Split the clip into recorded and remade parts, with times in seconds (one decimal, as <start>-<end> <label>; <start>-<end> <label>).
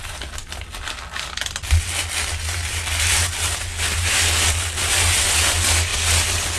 0.0-6.6 recorded